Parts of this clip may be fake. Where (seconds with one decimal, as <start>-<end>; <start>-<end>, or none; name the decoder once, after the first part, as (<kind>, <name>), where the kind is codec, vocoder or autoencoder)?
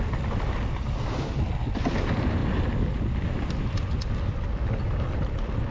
none